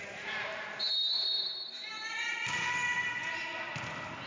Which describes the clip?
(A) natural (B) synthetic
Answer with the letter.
A